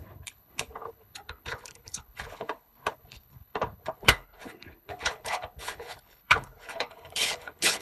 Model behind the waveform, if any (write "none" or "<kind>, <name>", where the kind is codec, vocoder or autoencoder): codec, HILCodec